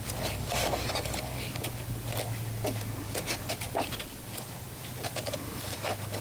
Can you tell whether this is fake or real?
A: fake